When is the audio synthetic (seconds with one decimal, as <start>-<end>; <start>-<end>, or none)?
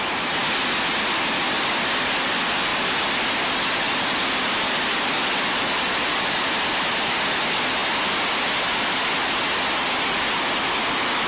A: none